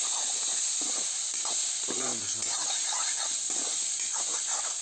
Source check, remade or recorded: recorded